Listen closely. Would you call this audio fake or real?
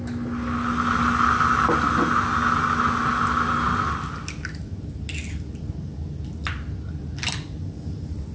real